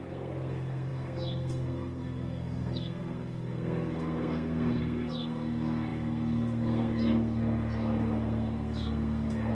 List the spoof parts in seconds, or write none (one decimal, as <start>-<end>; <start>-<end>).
0.0-9.5